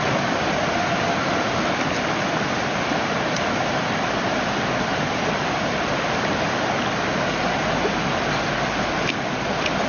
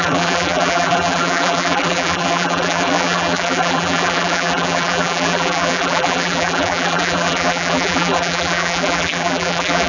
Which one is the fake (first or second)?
second